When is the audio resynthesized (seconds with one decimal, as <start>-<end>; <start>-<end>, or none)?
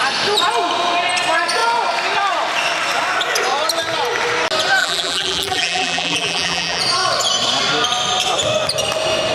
4.8-6.8